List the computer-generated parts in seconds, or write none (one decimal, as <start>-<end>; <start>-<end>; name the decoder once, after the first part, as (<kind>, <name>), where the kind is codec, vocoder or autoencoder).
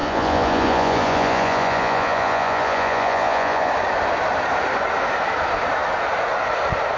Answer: 0.0-3.7 (vocoder, Vocos)